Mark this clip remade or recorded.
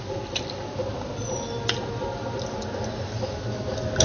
recorded